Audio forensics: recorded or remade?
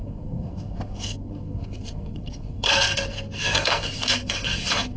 remade